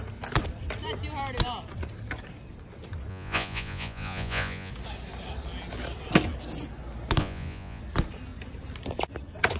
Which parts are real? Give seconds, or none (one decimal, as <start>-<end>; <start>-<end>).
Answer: 0.0-3.1; 4.7-7.2; 7.8-9.6